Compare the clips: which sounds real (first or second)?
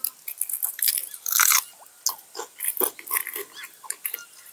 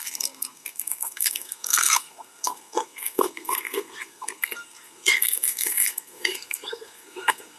first